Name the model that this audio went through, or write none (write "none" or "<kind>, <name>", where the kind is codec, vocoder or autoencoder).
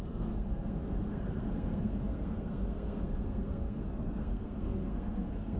codec, SNAC